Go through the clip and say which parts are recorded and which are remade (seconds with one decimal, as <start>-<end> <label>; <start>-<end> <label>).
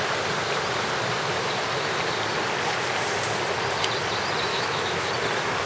0.0-4.5 recorded; 4.5-5.1 remade; 5.1-5.7 recorded